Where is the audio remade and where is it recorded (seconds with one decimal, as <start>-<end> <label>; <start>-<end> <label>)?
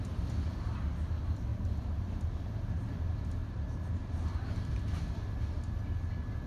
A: 0.0-1.5 recorded; 1.5-2.1 remade; 2.1-3.4 recorded; 3.4-4.8 remade; 4.8-6.5 recorded